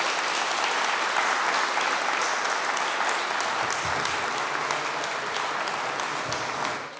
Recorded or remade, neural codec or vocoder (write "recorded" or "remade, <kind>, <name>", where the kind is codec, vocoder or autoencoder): recorded